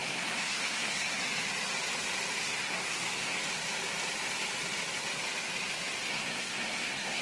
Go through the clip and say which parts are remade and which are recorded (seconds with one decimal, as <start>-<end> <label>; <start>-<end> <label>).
0.0-1.1 remade; 1.1-2.4 recorded; 2.4-3.4 remade; 3.4-6.1 recorded; 6.1-7.2 remade